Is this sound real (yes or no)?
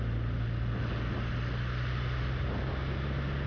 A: yes